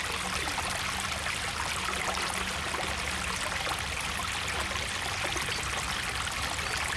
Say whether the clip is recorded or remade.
recorded